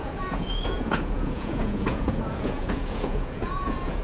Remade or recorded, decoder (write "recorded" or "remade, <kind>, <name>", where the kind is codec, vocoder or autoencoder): remade, vocoder, Vocos